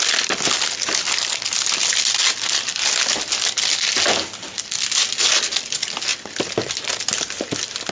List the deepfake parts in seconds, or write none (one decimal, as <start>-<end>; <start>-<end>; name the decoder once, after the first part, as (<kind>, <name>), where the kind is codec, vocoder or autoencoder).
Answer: none